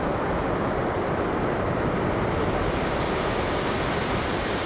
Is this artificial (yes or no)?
no